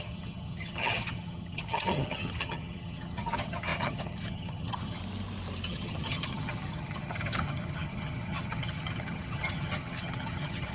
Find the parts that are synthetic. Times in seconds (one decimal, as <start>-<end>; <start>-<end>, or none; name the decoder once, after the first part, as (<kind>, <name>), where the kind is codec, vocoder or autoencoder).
0.0-5.0 (vocoder, HiFi-GAN); 5.7-10.7